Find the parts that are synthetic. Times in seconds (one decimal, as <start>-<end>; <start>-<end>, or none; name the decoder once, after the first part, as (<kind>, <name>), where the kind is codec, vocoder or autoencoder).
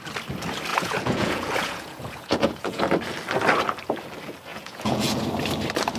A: 0.7-2.8 (vocoder, Vocos); 4.5-5.2